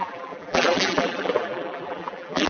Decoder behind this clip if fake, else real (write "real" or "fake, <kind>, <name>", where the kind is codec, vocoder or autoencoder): fake, vocoder, BigVGAN v2